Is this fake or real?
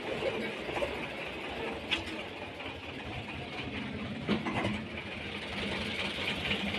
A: real